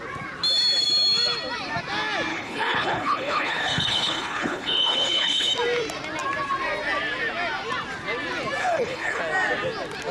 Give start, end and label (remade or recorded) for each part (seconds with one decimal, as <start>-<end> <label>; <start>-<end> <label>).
0.0-2.3 recorded; 2.3-5.5 remade; 5.5-8.6 recorded; 8.6-9.2 remade; 9.2-10.1 recorded